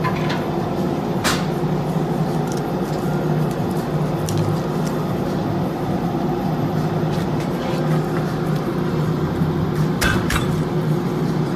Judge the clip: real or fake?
real